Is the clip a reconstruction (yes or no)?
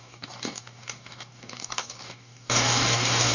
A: yes